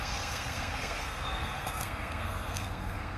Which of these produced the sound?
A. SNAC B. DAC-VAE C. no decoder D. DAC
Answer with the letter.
A